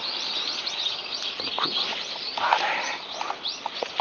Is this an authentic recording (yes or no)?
yes